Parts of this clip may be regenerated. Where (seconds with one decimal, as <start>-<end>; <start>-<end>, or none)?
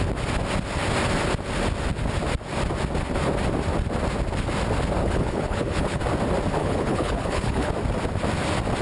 5.0-6.0; 6.6-7.7